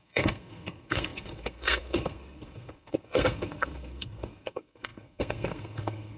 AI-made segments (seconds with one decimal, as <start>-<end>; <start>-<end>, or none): 0.0-6.2